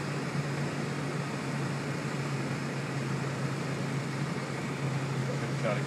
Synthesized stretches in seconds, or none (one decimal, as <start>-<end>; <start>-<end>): 5.2-5.9